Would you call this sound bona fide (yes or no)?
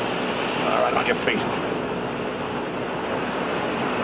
no